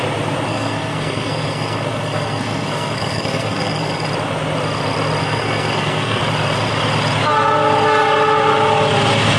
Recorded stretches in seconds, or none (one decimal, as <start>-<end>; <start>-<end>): 0.0-0.5; 4.1-5.2; 6.2-9.4